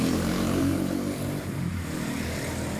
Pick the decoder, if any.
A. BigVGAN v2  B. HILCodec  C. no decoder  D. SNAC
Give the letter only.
A